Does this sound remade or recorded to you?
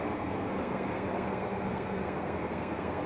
remade